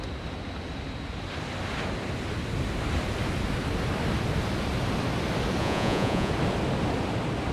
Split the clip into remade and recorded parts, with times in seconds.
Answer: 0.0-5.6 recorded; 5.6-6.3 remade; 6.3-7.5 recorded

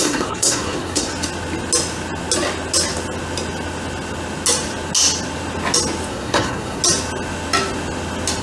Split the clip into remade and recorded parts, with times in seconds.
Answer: 0.0-1.1 remade; 1.1-6.1 recorded; 6.1-6.8 remade; 6.8-8.4 recorded

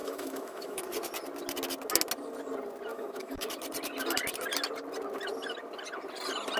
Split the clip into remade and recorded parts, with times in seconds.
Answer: 0.0-0.8 remade; 0.8-2.9 recorded; 2.9-3.5 remade; 3.5-6.6 recorded

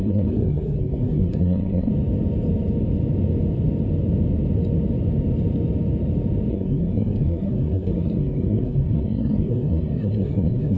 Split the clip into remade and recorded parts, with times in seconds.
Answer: 0.0-1.9 remade; 1.9-6.5 recorded; 6.5-10.8 remade

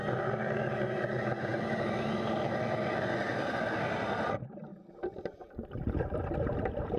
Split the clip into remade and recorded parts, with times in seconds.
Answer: 0.0-7.0 recorded

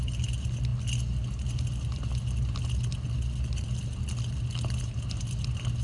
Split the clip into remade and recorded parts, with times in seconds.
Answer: 0.0-5.8 recorded

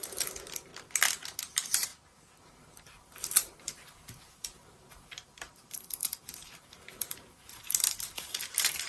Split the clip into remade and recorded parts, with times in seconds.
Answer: 0.0-0.7 remade; 0.7-1.4 recorded; 1.4-1.9 remade; 1.9-2.4 recorded; 2.4-8.9 remade